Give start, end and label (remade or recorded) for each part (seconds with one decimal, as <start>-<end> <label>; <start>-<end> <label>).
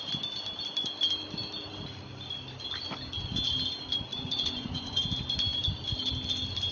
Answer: 0.0-4.1 recorded; 4.1-5.0 remade; 5.0-6.7 recorded